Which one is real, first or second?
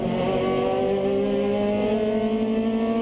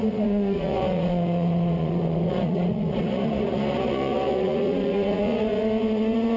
first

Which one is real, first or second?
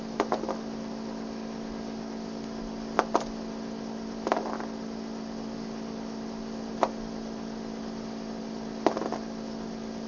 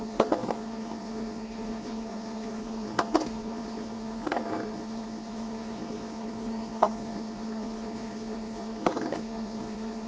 first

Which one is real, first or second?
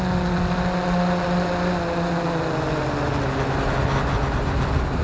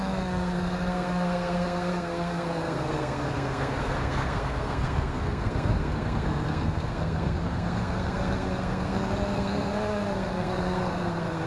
first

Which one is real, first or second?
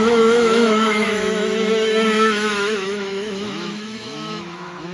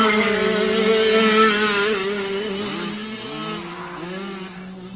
second